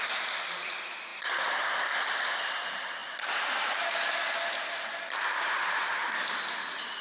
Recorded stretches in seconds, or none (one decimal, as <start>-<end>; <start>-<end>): 0.0-1.1; 1.7-7.0